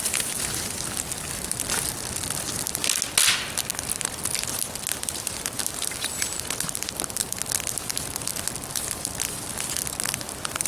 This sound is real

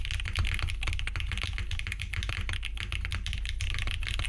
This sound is real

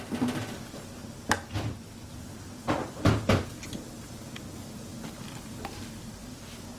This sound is real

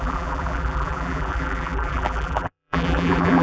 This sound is fake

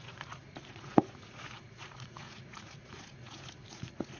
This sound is fake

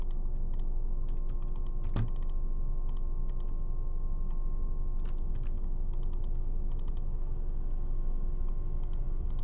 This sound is real